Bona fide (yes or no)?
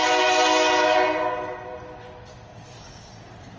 yes